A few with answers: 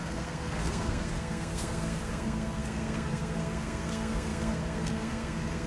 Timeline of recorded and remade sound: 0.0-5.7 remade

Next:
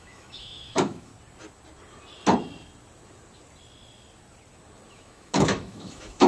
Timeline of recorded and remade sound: 0.0-1.1 remade; 1.1-4.9 recorded; 4.9-6.3 remade

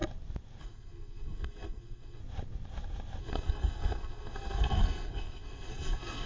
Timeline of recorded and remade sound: 0.0-0.6 recorded; 0.6-2.2 remade; 2.2-3.2 recorded; 3.2-6.3 remade